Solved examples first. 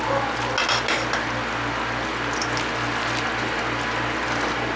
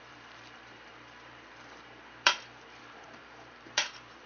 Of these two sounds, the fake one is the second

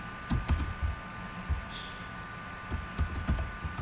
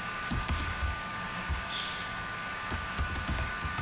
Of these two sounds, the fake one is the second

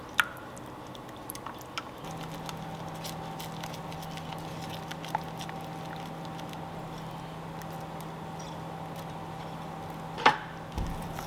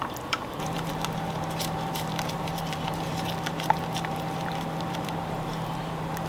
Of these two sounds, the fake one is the second